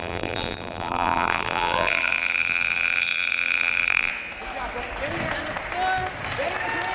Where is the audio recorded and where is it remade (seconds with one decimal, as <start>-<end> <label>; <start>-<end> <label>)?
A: 0.0-4.1 remade; 4.1-6.9 recorded